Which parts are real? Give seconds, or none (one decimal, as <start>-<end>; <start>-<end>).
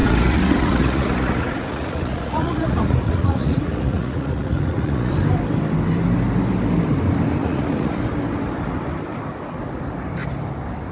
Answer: 5.1-7.4; 8.0-10.9